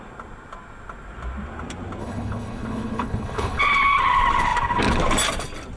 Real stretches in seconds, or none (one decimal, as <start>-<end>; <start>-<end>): 0.0-2.0; 3.6-5.8